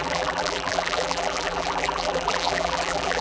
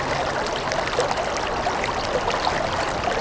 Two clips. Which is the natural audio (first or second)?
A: second